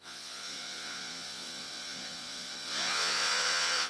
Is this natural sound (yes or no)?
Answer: no